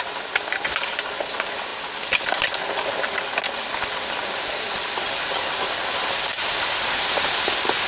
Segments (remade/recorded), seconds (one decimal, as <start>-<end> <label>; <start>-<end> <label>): 0.0-7.9 recorded